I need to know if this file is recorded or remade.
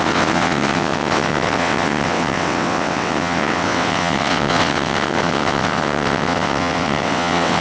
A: remade